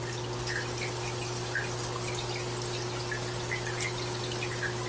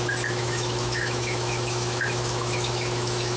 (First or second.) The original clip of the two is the first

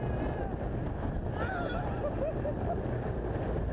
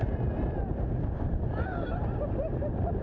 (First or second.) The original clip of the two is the first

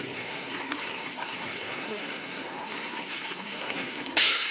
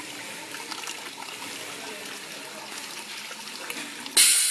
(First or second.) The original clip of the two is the second